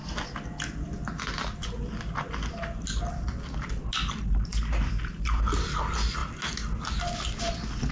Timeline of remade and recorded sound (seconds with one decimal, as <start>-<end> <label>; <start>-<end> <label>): 0.0-7.9 recorded